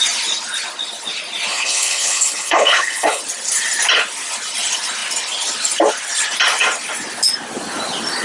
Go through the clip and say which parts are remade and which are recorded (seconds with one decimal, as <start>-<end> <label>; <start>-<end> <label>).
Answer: 0.0-1.5 recorded; 1.5-3.2 remade; 3.2-8.2 recorded